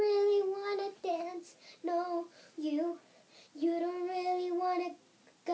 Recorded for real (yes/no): yes